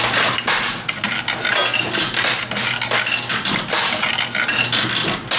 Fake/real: real